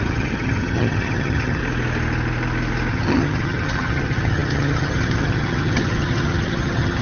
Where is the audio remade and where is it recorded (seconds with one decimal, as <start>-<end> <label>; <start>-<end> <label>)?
0.0-1.6 remade; 1.6-2.9 recorded; 2.9-7.0 remade